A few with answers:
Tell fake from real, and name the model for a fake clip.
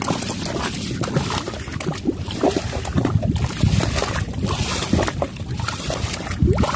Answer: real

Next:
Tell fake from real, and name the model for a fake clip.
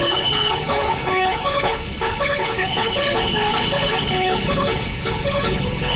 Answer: fake, codec, HILCodec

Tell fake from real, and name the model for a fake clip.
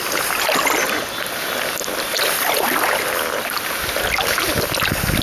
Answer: real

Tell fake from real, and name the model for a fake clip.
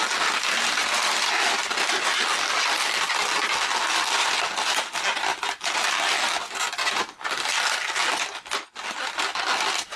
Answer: real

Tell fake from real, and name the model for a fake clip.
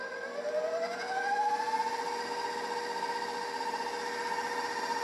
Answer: real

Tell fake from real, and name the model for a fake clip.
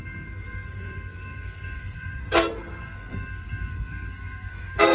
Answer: fake, codec, SNAC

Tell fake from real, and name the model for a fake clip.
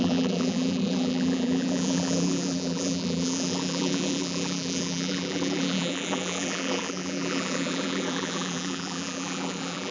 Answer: fake, vocoder, BigVGAN v2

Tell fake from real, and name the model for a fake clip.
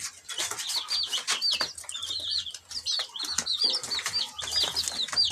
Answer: real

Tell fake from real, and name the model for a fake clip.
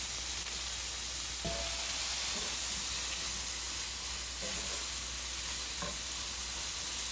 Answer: real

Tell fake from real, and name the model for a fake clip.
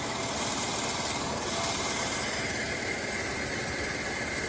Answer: real